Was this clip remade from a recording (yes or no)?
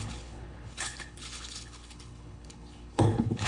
yes